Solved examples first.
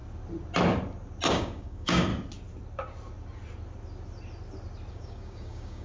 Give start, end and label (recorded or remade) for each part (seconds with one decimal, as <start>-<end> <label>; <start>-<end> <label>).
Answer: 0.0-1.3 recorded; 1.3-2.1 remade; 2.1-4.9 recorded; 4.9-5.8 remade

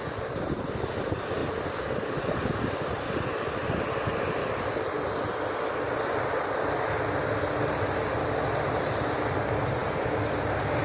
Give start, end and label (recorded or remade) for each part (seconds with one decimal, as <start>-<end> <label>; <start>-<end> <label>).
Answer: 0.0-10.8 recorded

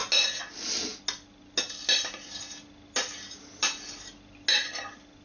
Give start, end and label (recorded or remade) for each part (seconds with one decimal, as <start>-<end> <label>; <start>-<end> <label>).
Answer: 0.0-5.2 recorded